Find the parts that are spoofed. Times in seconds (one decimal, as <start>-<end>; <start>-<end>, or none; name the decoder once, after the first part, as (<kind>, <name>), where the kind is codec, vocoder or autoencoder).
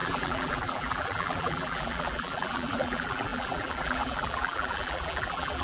0.0-5.6 (vocoder, BigVGAN v2)